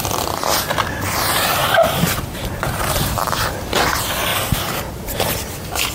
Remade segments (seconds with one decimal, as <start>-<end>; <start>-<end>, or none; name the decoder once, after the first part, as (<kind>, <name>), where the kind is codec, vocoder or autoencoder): 1.6-3.2 (vocoder, BigVGAN v2); 4.3-5.5